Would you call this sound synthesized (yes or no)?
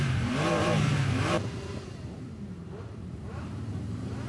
yes